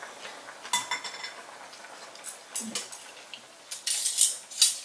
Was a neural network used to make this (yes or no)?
no